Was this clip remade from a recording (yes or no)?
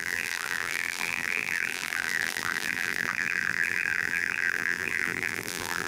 yes